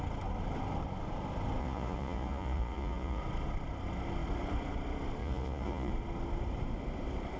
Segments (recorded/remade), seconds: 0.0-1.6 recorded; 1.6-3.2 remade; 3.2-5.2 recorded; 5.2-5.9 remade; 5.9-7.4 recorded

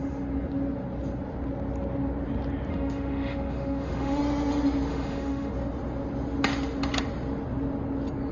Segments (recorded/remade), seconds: 0.0-2.7 recorded; 2.7-4.2 remade; 4.2-4.9 recorded; 4.9-5.5 remade; 5.5-8.3 recorded

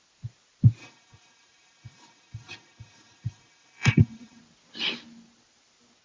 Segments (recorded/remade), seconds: 0.0-0.8 recorded; 0.8-4.4 remade; 4.4-6.0 recorded

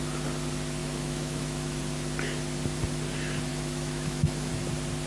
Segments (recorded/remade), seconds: 0.0-0.8 recorded; 0.8-1.8 remade; 1.8-3.5 recorded; 3.5-4.5 remade; 4.5-5.1 recorded

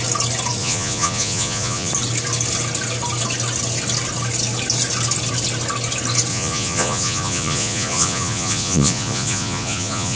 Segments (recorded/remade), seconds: 0.0-0.6 recorded; 0.6-1.9 remade; 1.9-6.3 recorded; 6.3-10.2 remade